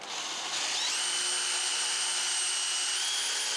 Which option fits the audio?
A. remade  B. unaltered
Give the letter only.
B